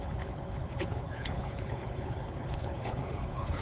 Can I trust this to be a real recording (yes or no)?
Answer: no